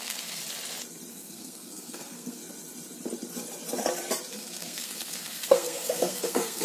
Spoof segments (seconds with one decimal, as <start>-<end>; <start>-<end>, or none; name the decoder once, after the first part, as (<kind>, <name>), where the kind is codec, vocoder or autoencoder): 0.0-0.4 (codec, SNAC); 1.1-2.4; 4.3-6.6